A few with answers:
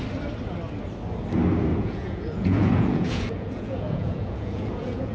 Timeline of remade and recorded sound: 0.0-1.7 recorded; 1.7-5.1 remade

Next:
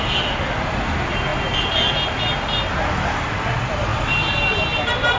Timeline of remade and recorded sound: 0.0-5.2 recorded

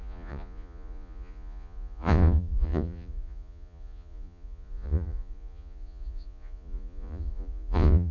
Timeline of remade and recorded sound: 0.0-8.1 remade

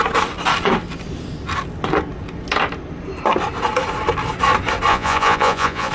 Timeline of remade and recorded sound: 0.0-4.9 recorded; 4.9-5.9 remade